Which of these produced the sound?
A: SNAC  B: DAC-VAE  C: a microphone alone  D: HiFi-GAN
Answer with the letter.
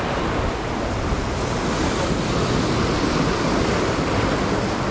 C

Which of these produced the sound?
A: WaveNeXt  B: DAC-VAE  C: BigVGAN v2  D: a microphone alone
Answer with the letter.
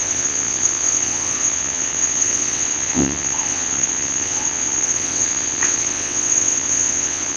A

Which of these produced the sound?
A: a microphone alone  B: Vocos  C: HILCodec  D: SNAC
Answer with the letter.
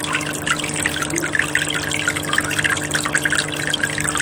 A